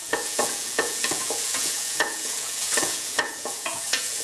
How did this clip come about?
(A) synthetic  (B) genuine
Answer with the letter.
A